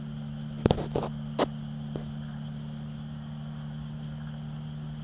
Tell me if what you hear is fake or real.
real